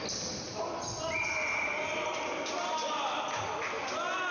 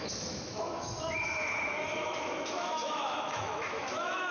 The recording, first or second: first